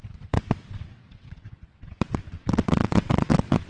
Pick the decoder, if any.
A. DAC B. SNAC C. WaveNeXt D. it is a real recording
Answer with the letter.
C